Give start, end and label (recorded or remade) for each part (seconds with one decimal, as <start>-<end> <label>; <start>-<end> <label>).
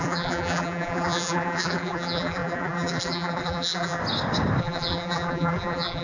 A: 0.0-4.0 remade; 4.0-4.6 recorded; 4.6-6.0 remade